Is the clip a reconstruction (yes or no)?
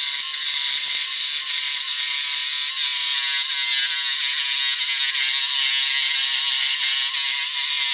no